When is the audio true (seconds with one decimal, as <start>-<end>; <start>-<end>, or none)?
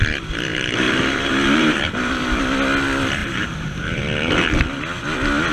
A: 0.0-0.5; 2.4-3.2; 4.0-5.5